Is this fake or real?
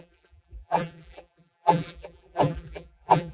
fake